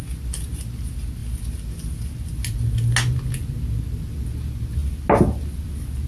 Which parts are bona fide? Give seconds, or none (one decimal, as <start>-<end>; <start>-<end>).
0.0-6.1